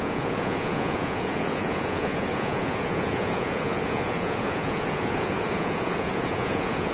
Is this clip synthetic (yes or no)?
yes